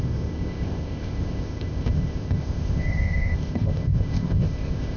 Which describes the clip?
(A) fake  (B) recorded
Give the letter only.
A